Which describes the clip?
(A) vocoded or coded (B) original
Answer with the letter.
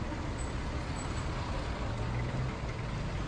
B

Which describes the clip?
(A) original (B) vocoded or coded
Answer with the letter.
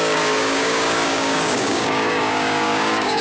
B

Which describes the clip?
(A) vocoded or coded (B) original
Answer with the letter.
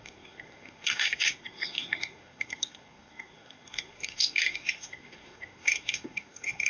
A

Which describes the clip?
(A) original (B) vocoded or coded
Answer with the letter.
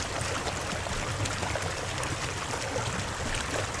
A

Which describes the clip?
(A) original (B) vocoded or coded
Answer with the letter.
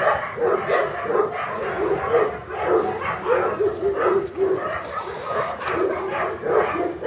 A